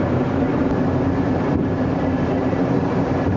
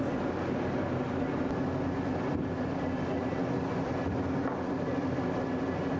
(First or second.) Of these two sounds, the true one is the second